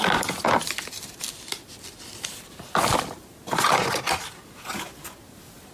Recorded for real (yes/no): yes